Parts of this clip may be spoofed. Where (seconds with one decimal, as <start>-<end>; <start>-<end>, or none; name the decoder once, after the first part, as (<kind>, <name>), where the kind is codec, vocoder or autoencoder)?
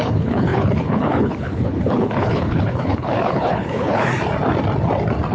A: 0.0-4.1 (codec, HILCodec)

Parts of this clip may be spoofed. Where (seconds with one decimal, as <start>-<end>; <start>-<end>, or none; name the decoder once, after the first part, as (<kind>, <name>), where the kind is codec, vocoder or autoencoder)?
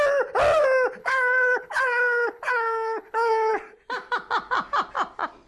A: 1.0-3.5 (codec, HILCodec)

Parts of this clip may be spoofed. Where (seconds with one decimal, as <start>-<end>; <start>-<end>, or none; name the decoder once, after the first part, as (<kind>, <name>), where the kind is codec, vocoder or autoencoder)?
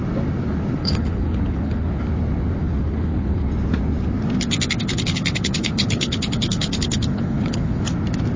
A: 0.8-2.0 (codec, HILCodec); 2.6-3.5; 4.9-7.8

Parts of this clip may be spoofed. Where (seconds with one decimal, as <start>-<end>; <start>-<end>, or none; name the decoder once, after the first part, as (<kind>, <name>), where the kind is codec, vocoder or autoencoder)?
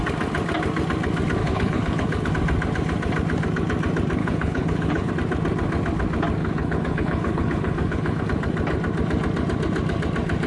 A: 1.4-2.3 (codec, HILCodec); 4.2-5.1; 6.4-8.2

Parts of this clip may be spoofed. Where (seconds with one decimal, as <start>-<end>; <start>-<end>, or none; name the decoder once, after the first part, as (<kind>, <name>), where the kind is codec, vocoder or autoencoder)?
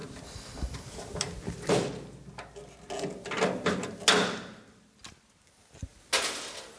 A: none